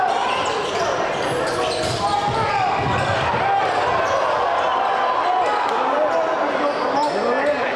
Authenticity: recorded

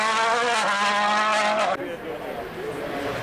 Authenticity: recorded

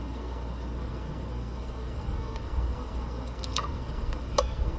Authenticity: remade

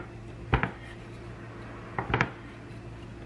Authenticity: recorded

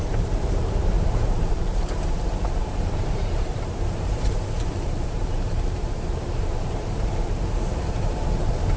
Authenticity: remade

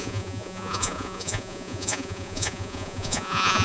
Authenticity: remade